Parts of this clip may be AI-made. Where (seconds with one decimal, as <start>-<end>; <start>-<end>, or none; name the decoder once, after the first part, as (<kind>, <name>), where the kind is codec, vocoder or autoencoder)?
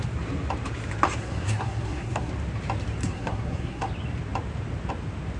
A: 1.2-2.3 (codec, SNAC); 3.0-3.9